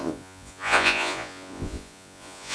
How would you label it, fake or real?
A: fake